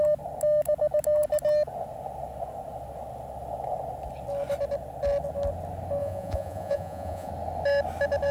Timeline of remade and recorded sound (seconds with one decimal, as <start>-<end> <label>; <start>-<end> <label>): 0.0-6.0 recorded; 6.0-7.3 remade; 7.3-8.3 recorded